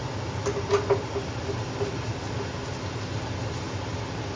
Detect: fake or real real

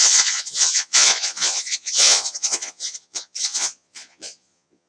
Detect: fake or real fake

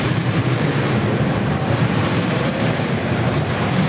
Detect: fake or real fake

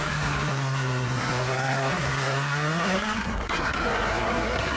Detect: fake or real fake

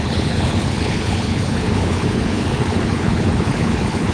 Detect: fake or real fake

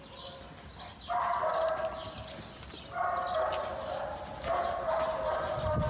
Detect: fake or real real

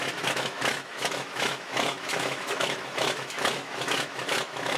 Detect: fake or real fake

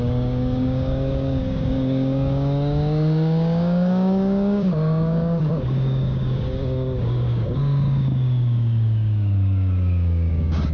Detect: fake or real fake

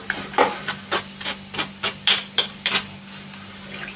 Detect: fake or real real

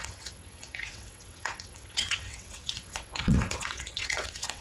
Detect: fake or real fake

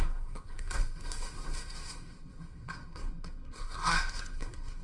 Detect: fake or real fake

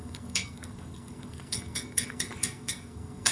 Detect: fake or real fake